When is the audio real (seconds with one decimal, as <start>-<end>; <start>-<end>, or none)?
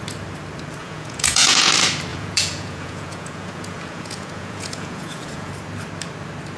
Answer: 0.0-0.8; 1.7-2.1; 5.5-6.6